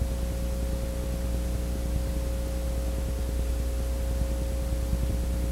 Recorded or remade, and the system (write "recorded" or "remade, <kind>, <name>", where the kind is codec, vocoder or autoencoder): recorded